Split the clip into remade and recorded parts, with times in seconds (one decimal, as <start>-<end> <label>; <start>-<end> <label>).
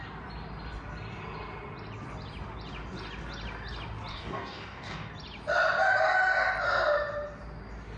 0.0-4.1 recorded; 4.1-5.1 remade; 5.1-8.0 recorded